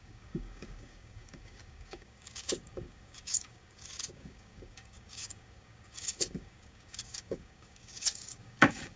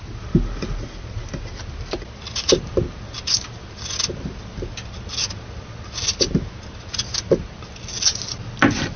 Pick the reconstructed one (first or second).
first